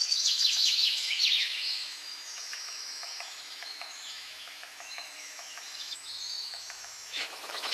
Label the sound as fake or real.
fake